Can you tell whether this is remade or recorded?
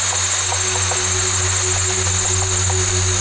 recorded